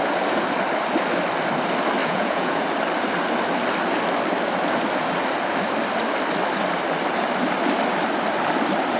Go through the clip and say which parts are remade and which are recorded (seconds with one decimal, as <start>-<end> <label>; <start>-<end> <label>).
0.0-2.0 recorded; 2.0-2.6 remade; 2.6-9.0 recorded